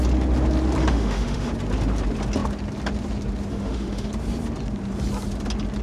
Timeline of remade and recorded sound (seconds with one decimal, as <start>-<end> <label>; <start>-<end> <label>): 0.0-0.8 recorded; 0.8-1.5 remade; 1.5-3.5 recorded; 3.5-4.1 remade; 4.1-5.8 recorded